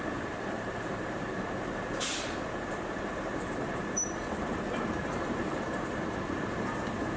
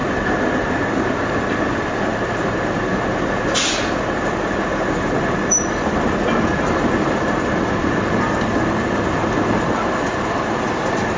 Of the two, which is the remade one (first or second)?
first